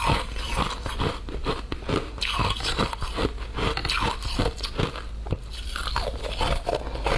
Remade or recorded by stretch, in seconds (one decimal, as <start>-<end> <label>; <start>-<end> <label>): 0.0-7.2 recorded